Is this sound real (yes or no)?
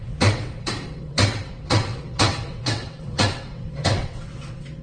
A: no